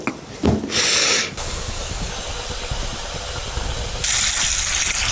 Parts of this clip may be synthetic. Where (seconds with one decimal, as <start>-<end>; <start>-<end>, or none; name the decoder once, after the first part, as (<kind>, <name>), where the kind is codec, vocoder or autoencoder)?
1.0-2.1 (codec, DAC)